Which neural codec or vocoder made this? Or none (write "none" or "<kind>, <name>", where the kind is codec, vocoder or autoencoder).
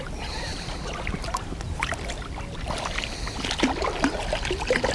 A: none